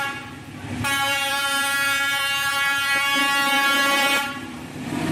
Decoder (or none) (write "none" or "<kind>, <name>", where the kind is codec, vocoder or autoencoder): vocoder, BigVGAN v2